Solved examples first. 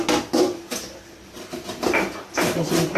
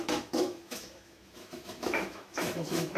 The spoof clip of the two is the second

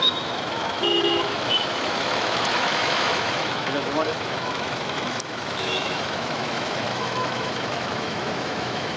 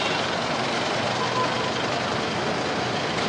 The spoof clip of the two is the first